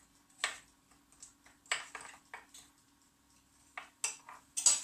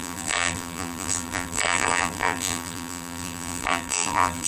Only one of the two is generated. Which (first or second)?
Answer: second